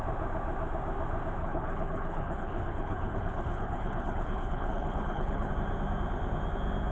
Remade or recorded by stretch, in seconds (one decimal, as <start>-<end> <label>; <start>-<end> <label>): 0.0-1.4 recorded; 1.4-5.5 remade; 5.5-6.9 recorded